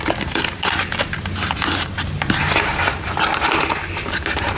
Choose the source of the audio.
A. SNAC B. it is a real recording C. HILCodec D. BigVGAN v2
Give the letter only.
B